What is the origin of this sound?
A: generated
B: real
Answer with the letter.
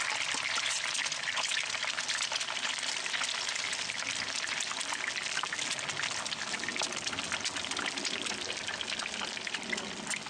B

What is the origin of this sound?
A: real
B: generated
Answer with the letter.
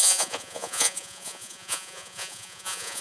B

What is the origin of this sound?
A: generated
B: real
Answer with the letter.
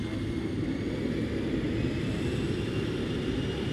B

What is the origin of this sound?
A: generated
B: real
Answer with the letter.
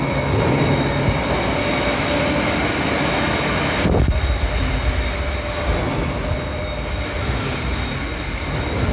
B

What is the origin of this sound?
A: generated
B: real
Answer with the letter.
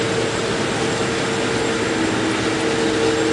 B